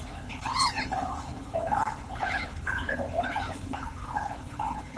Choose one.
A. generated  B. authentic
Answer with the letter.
A